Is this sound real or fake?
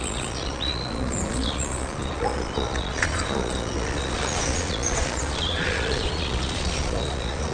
fake